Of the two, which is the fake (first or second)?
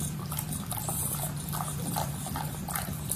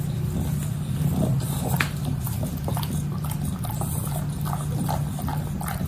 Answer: first